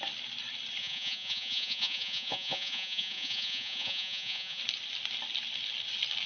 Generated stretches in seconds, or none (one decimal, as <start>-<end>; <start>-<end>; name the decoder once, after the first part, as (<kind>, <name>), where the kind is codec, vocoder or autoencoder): 0.8-4.6 (vocoder, Vocos)